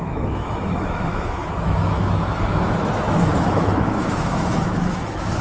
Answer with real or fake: fake